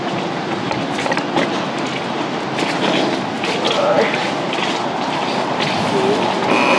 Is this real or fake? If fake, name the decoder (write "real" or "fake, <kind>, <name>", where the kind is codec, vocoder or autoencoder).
real